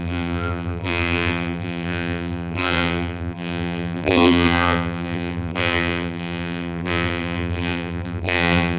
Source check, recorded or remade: remade